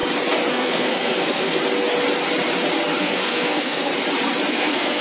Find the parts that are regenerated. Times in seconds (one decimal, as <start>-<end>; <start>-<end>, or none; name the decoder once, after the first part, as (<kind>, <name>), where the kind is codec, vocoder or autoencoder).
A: 0.5-1.6 (codec, SNAC); 3.0-3.9; 4.5-5.0